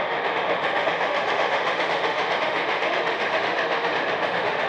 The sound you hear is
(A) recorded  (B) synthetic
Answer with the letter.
B